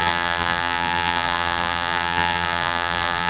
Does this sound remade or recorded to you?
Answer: remade